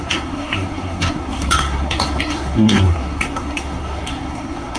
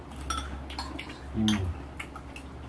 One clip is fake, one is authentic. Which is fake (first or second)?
first